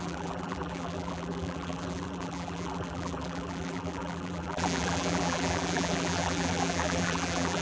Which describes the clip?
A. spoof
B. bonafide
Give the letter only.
A